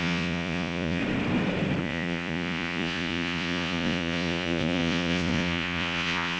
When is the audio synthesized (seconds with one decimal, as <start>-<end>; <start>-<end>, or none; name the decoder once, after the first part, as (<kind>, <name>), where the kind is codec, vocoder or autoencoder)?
0.0-1.0 (vocoder, Vocos); 1.8-6.4

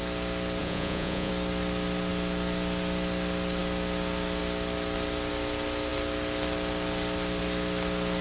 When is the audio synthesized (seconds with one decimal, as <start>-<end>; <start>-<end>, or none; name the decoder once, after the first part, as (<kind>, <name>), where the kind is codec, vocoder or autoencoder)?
0.6-1.3 (vocoder, Vocos)